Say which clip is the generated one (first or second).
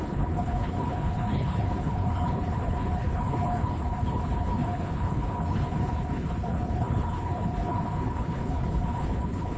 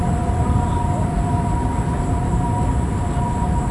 first